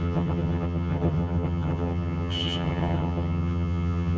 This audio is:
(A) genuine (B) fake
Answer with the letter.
B